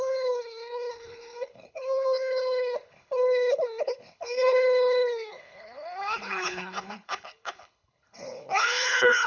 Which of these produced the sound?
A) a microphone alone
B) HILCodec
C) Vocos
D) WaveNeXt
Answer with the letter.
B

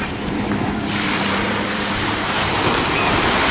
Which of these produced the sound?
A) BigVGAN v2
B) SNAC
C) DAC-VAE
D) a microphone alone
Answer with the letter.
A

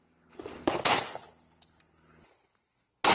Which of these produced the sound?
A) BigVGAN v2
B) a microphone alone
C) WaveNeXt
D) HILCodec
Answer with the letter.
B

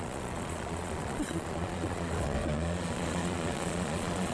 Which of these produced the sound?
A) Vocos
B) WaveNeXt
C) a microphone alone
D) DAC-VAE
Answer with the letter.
A